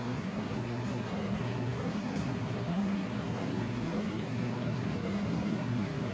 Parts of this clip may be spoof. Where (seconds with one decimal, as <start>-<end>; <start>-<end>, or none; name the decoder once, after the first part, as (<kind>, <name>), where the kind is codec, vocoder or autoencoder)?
0.0-6.1 (codec, SNAC)